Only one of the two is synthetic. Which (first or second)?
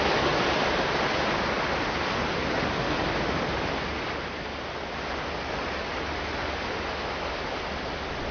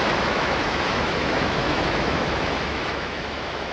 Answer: second